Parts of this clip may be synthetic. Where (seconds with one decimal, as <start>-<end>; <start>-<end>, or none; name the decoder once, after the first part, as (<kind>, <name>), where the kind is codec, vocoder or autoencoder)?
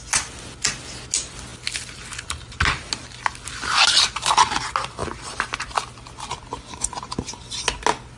none